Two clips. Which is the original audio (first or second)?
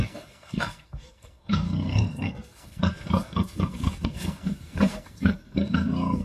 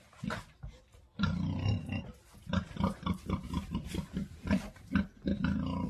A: second